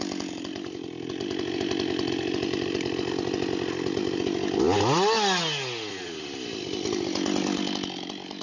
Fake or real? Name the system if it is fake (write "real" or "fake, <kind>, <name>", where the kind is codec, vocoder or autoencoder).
real